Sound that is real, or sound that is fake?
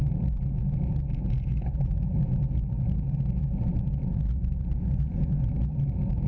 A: fake